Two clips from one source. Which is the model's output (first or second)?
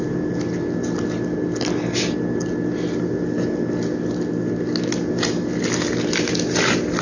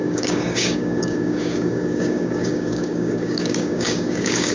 second